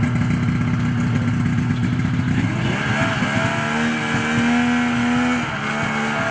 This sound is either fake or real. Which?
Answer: real